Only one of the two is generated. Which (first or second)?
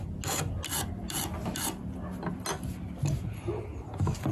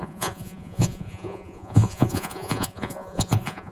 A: second